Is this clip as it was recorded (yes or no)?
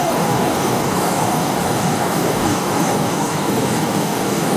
no